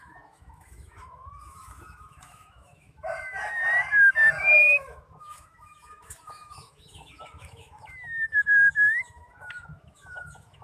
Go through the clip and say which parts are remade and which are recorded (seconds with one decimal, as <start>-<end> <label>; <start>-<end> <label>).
0.0-3.6 remade; 3.6-4.4 recorded; 4.4-10.6 remade